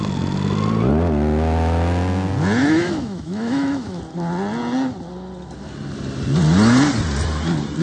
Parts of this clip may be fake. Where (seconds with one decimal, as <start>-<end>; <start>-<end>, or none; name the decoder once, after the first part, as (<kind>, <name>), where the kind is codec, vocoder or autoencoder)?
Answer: 2.6-4.0 (autoencoder, DAC-VAE)